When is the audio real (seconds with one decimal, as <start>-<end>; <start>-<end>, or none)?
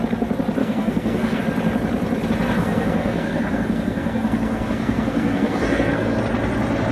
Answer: 0.0-0.6; 1.4-2.6; 6.2-6.9